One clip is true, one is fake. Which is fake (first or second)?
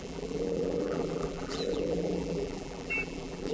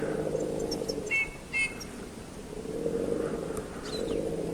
first